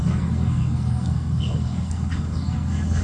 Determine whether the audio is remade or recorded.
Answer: remade